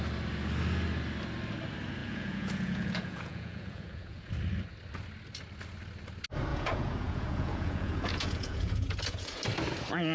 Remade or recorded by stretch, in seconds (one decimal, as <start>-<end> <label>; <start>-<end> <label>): 0.0-2.0 recorded; 2.0-4.3 remade; 4.3-6.5 recorded; 6.5-9.4 remade; 9.4-10.1 recorded